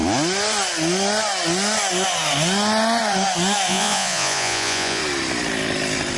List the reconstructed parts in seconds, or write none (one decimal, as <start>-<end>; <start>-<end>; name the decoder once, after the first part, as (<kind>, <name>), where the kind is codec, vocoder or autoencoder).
3.7-5.0 (vocoder, Vocos)